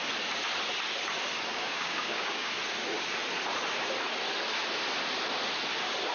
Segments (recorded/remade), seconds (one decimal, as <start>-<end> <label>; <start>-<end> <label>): 0.0-1.5 recorded; 1.5-2.5 remade; 2.5-6.1 recorded